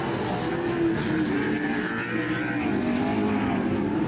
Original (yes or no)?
yes